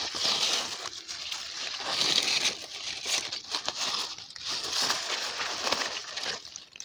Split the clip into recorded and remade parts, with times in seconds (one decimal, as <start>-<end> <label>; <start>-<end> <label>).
0.0-0.9 recorded; 0.9-3.4 remade; 3.4-6.8 recorded